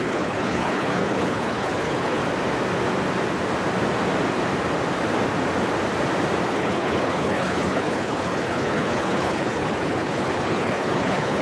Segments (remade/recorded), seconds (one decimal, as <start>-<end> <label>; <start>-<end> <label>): 0.0-2.2 remade; 2.2-6.5 recorded; 6.5-11.4 remade